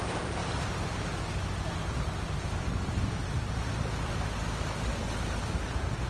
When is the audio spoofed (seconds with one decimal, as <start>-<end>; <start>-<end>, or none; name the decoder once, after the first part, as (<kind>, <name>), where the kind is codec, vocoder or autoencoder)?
0.0-0.4 (vocoder, BigVGAN v2); 1.9-3.7; 5.5-6.1